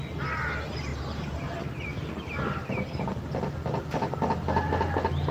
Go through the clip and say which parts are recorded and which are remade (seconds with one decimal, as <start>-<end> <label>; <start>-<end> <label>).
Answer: 0.0-0.9 recorded; 0.9-1.4 remade; 1.4-5.3 recorded